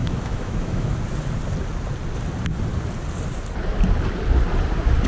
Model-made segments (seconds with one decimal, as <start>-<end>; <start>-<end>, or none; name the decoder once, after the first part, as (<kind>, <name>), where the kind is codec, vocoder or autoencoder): 0.0-1.0 (autoencoder, DAC-VAE)